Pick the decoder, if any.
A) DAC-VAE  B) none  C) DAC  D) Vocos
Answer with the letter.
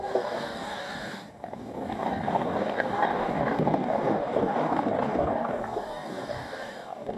C